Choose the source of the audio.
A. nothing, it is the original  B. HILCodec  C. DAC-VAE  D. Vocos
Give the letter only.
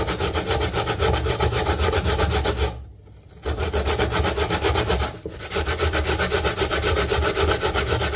A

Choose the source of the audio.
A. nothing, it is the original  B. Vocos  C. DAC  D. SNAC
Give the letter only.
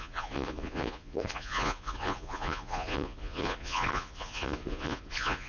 B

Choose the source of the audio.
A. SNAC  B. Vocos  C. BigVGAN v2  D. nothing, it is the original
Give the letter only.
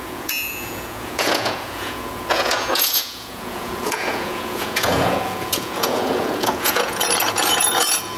B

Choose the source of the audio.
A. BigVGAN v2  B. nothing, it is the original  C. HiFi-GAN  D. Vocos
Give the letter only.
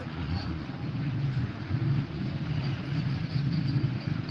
D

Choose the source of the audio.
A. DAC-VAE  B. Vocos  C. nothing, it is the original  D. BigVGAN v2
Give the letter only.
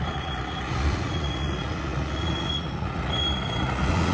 B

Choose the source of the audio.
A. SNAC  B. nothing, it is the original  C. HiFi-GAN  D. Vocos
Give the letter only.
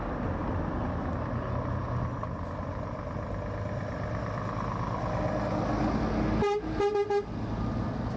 B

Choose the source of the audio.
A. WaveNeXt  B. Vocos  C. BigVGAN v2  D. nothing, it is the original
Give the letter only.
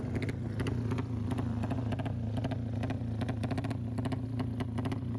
D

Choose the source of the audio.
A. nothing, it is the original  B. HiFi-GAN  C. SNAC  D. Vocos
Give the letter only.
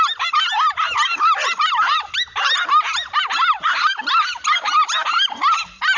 A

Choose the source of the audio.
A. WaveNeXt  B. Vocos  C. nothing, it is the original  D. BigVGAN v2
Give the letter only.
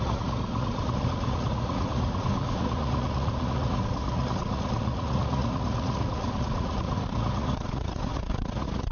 B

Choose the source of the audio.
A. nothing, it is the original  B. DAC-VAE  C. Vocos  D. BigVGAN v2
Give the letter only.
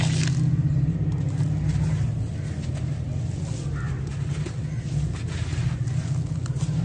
A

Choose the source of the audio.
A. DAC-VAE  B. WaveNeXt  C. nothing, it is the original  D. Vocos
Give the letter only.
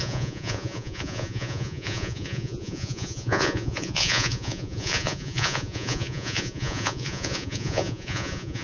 D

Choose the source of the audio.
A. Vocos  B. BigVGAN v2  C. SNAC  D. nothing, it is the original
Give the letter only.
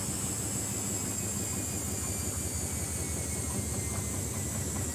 D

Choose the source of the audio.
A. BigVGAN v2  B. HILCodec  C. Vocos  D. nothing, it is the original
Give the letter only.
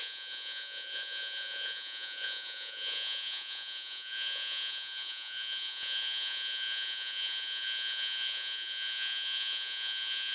C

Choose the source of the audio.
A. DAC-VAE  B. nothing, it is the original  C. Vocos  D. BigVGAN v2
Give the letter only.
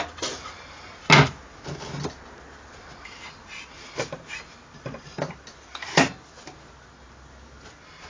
B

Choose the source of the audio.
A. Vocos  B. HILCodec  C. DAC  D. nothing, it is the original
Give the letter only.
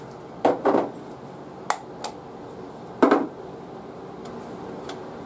D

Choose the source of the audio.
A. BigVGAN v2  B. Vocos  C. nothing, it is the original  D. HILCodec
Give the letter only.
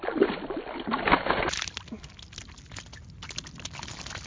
C